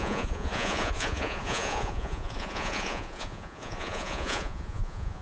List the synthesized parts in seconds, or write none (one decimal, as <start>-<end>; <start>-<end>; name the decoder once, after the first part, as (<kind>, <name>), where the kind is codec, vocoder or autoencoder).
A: 0.0-5.2 (vocoder, Vocos)